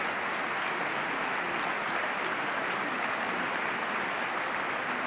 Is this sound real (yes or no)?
yes